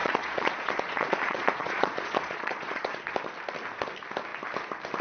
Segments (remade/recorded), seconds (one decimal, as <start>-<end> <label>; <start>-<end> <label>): 0.0-3.0 remade; 3.0-5.0 recorded